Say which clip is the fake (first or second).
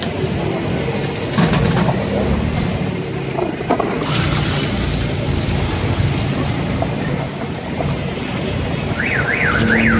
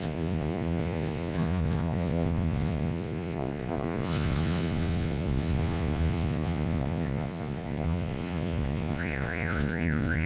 second